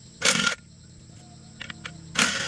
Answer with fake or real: real